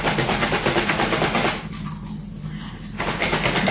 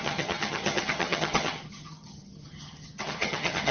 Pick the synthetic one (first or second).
second